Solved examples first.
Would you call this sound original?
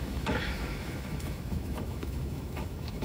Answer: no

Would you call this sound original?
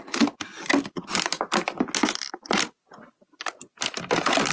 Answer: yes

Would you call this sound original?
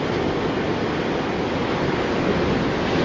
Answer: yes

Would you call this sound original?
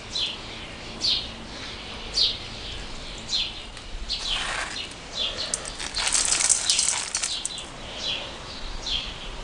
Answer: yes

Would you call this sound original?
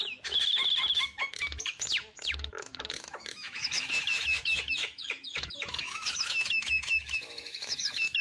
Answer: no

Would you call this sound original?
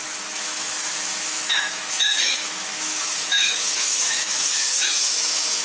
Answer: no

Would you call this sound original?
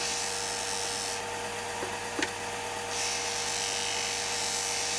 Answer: yes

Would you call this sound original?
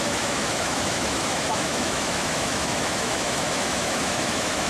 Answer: no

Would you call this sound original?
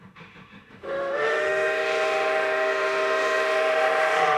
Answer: no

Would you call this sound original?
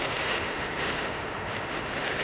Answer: no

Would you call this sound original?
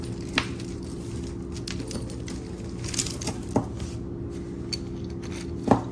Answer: yes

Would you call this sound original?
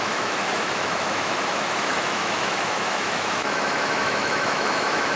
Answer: no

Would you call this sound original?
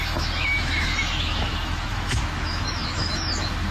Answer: no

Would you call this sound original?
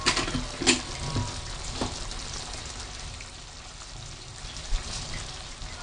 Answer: yes